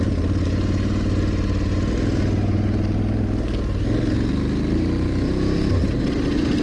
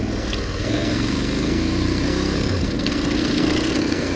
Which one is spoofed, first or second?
second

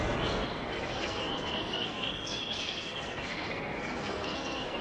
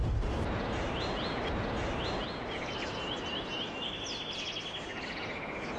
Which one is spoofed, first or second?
first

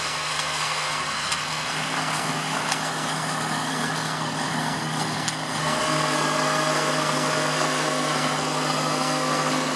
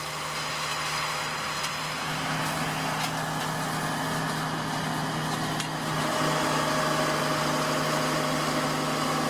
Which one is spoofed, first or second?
first